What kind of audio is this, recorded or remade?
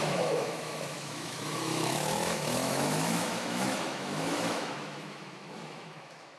remade